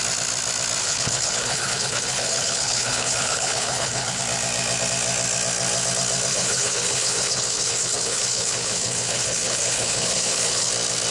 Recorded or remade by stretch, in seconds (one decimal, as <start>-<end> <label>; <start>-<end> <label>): 0.0-0.8 recorded; 0.8-4.2 remade; 4.2-6.3 recorded; 6.3-10.7 remade; 10.7-11.1 recorded